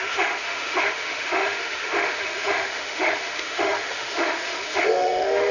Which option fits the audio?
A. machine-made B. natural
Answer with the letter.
A